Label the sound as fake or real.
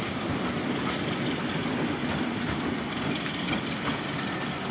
real